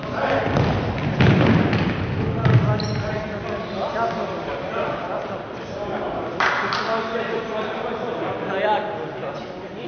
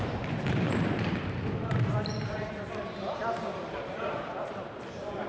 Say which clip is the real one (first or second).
first